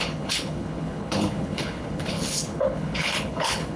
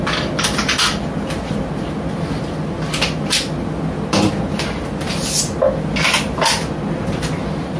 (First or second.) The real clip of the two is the second